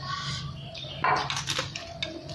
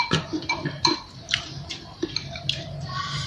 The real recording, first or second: first